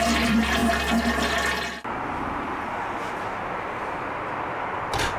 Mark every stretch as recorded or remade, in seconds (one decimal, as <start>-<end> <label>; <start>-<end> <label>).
0.0-5.2 recorded